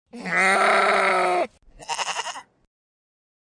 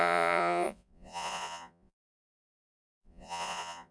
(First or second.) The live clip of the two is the first